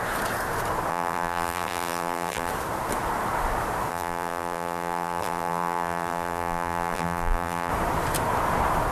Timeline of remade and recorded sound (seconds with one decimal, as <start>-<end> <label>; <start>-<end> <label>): 0.0-0.9 recorded; 0.9-2.5 remade; 2.5-3.9 recorded; 3.9-7.7 remade; 7.7-8.9 recorded